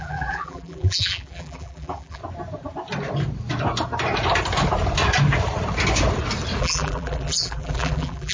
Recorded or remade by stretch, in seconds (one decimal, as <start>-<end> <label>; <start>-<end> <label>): 0.0-2.2 remade; 2.2-6.6 recorded; 6.6-8.3 remade